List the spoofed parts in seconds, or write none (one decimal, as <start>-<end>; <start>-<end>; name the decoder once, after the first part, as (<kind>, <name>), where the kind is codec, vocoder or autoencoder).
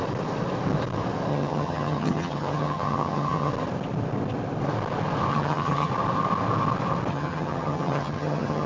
1.3-3.5 (vocoder, HiFi-GAN); 5.3-5.9; 7.1-8.7